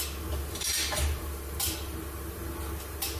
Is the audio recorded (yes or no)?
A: yes